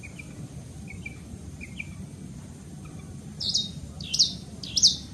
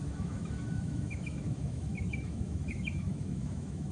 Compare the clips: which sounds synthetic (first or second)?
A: second